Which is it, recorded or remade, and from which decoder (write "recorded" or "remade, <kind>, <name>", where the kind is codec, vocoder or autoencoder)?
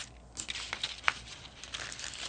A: recorded